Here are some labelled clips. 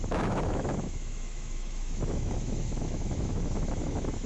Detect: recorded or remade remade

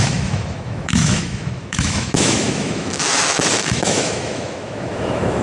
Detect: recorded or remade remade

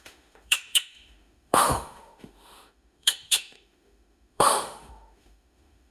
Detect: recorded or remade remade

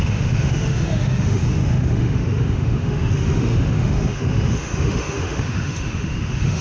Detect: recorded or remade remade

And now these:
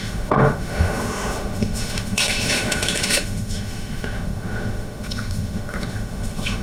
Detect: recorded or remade remade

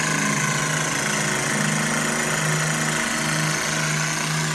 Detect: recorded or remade recorded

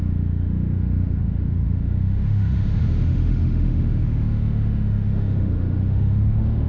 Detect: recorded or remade remade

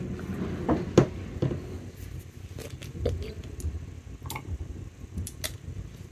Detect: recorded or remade recorded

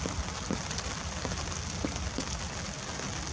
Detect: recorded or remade recorded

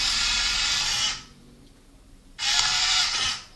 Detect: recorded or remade recorded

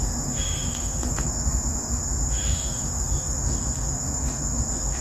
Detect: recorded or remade remade